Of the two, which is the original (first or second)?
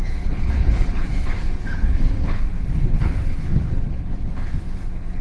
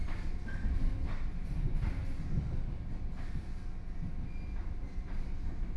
second